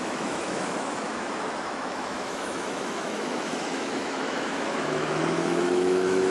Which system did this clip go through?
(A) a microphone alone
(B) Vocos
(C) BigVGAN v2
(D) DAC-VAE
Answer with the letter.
D